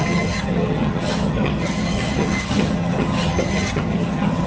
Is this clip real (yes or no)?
no